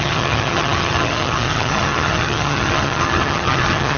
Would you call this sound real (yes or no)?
no